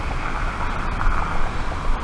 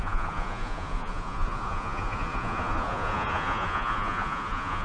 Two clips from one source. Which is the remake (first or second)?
second